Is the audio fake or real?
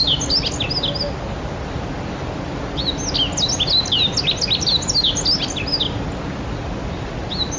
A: real